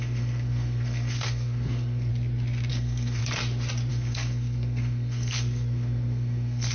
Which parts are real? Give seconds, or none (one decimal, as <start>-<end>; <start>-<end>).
2.1-2.7; 3.2-3.9